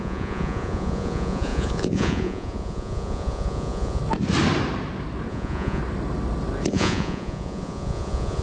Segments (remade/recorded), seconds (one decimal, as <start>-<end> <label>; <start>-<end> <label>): 0.0-4.0 remade; 4.0-5.3 recorded; 5.3-5.8 remade; 5.8-6.7 recorded; 6.7-8.4 remade